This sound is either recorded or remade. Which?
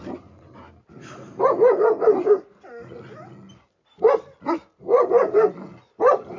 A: recorded